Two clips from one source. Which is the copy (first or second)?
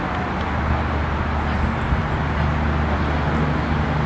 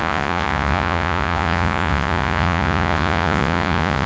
second